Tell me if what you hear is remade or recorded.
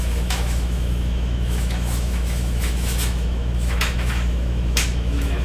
remade